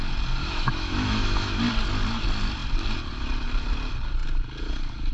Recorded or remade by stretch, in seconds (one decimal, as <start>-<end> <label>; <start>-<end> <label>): 0.0-0.4 recorded; 0.4-1.6 remade; 1.6-5.1 recorded